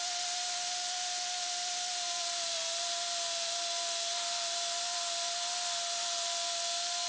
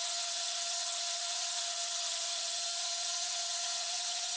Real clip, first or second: first